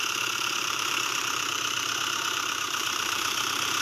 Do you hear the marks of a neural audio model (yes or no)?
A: yes